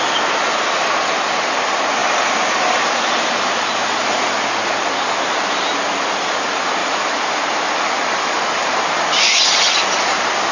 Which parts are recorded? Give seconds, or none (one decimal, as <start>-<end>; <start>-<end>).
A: 0.0-6.8; 9.0-10.5